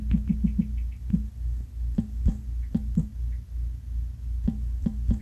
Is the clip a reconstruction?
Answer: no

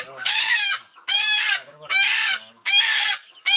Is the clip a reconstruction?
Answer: yes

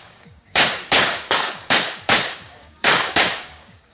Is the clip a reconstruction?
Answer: yes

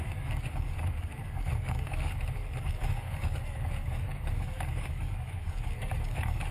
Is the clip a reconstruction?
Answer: yes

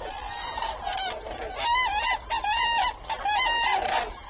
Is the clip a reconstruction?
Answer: no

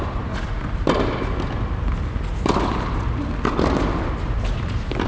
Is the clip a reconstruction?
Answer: no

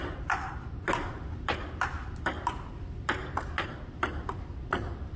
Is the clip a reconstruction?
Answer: no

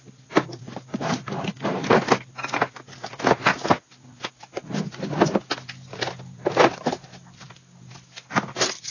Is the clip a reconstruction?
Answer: no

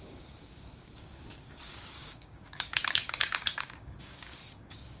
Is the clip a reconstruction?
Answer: yes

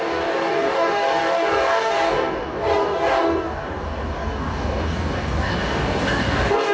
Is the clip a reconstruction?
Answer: yes